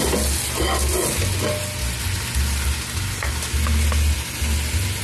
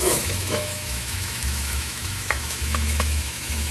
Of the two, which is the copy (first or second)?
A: second